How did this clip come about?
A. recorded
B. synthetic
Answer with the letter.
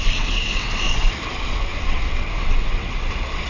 B